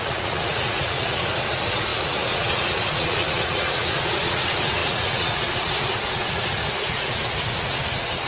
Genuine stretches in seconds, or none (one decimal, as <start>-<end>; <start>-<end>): none